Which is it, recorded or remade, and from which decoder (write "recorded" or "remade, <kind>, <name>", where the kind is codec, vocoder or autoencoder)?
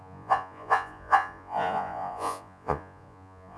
remade, vocoder, Vocos